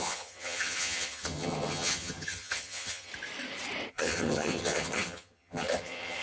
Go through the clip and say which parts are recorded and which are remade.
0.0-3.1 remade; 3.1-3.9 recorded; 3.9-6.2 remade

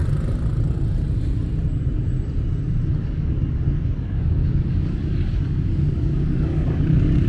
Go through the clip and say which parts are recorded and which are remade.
0.0-3.0 recorded; 3.0-7.3 remade

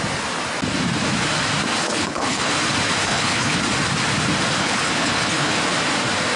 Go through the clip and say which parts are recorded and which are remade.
0.0-1.8 recorded; 1.8-2.5 remade; 2.5-3.0 recorded; 3.0-3.6 remade; 3.6-4.6 recorded; 4.6-5.6 remade; 5.6-6.4 recorded

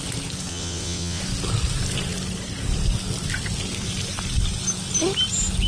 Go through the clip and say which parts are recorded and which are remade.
0.0-0.5 recorded; 0.5-1.2 remade; 1.2-5.7 recorded